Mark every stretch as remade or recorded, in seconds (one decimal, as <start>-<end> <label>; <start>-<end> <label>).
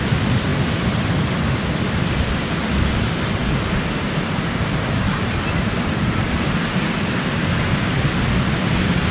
0.0-9.1 recorded